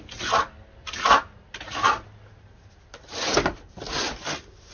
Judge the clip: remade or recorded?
recorded